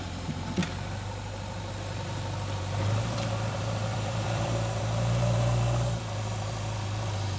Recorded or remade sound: remade